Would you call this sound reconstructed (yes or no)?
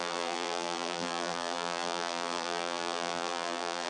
yes